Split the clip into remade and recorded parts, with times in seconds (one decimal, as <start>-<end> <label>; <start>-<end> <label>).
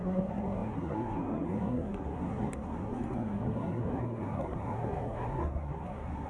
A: 0.0-6.3 remade